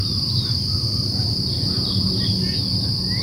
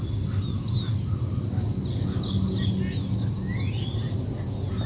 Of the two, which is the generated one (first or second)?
first